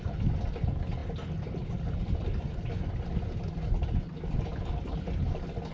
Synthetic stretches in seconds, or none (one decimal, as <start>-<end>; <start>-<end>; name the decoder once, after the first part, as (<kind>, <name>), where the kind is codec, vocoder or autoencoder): none